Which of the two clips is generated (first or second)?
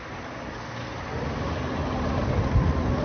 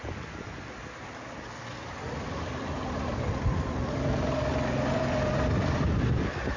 second